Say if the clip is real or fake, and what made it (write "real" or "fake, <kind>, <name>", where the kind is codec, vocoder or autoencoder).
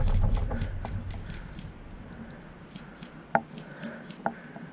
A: real